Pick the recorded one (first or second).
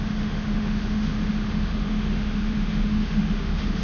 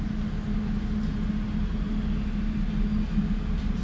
second